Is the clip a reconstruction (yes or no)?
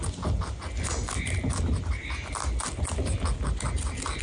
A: no